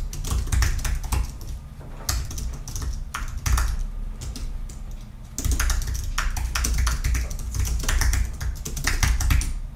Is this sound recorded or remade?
recorded